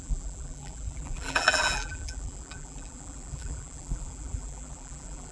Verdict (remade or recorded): remade